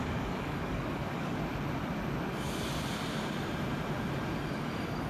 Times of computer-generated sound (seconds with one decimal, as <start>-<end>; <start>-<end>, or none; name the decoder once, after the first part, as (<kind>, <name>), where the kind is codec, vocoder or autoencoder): 0.0-1.4 (codec, DAC); 4.5-5.1